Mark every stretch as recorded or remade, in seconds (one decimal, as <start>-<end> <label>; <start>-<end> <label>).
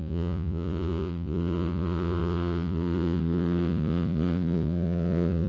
0.0-5.5 remade